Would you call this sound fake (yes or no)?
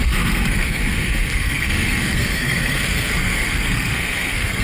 yes